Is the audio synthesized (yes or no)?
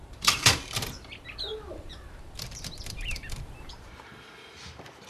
yes